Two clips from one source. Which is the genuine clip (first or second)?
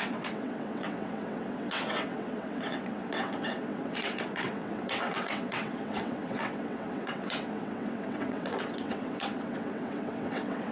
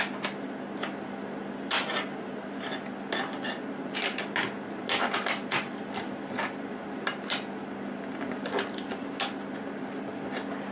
second